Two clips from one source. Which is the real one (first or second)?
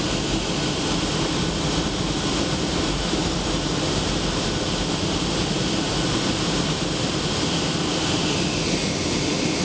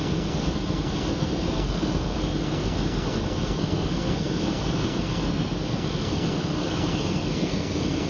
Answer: first